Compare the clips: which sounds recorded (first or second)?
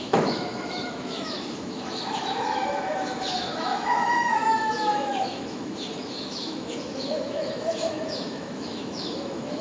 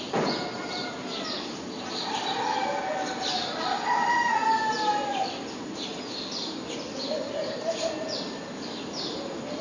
second